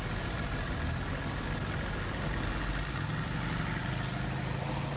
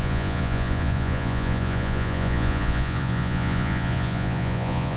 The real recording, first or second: first